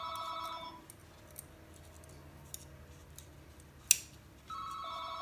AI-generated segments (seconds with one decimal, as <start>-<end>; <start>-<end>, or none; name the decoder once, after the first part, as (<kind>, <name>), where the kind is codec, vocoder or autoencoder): none